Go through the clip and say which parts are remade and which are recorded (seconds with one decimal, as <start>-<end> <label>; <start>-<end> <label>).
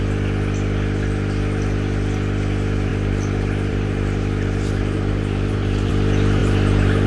0.0-2.9 recorded; 2.9-5.9 remade; 5.9-6.4 recorded; 6.4-7.1 remade